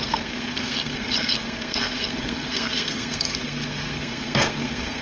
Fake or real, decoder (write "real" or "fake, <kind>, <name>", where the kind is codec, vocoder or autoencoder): fake, codec, SNAC